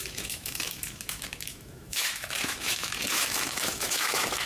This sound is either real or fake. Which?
fake